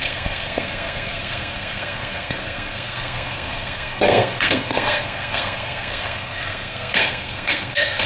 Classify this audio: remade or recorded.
remade